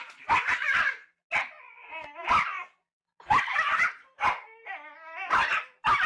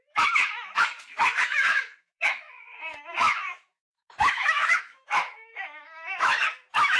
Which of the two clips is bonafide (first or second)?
first